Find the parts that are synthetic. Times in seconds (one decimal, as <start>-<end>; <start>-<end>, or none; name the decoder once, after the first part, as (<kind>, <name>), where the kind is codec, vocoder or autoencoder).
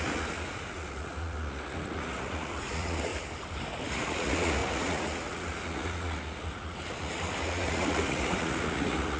0.0-3.1 (vocoder, Vocos); 3.9-9.2